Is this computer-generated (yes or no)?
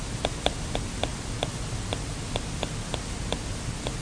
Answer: no